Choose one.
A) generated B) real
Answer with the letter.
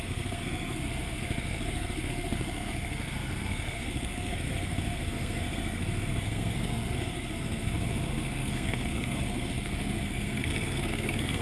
A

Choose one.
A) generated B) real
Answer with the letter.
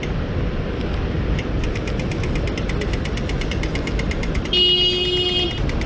B